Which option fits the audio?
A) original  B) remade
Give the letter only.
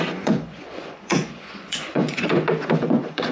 B